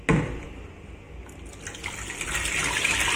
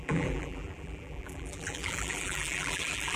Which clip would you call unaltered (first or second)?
first